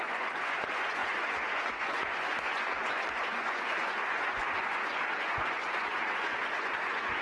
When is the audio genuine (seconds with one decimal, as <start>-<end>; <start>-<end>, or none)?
none